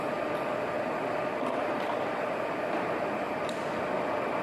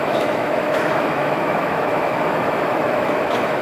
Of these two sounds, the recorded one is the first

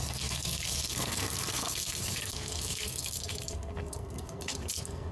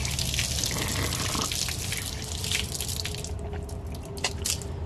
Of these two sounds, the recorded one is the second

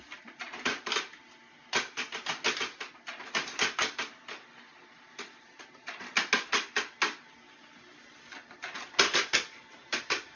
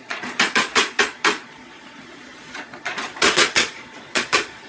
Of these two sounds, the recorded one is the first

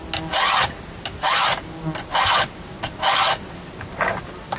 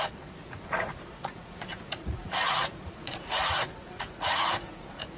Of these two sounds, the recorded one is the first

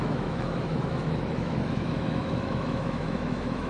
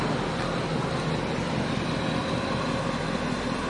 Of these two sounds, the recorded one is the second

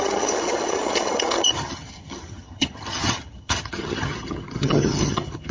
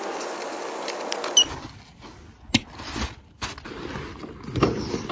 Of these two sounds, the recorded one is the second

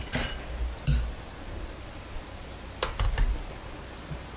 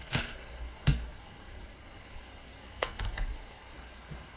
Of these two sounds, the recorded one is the first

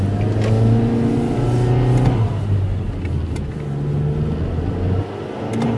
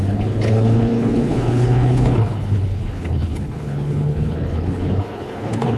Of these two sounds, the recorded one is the first